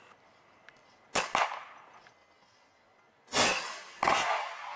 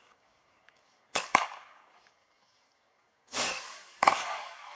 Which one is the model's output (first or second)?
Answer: second